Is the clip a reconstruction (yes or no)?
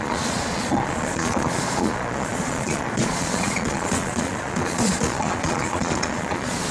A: yes